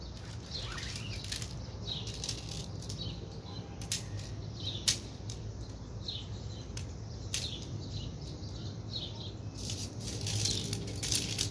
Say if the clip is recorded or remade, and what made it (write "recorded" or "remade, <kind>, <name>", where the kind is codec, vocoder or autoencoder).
recorded